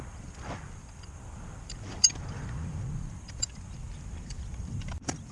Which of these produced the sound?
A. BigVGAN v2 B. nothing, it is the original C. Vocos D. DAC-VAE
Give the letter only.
A